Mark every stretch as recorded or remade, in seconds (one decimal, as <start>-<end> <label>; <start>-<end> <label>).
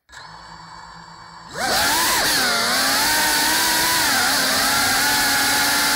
0.0-3.3 recorded; 3.3-4.8 remade; 4.8-6.0 recorded